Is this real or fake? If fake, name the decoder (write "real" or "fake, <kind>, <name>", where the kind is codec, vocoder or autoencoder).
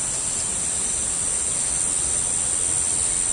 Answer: real